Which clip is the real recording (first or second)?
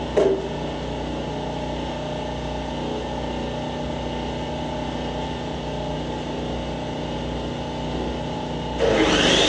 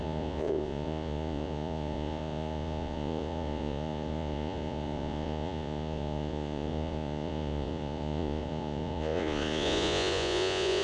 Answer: first